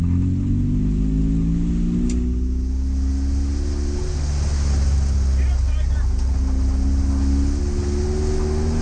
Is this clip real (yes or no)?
yes